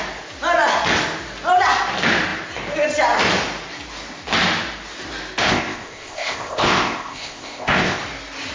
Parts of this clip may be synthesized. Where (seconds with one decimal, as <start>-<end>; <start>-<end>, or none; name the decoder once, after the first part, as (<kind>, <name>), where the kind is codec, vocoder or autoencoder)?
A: 5.4-8.0 (codec, ZipCodec)